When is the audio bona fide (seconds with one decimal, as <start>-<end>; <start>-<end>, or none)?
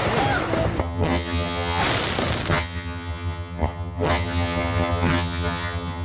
0.0-0.8; 1.8-2.5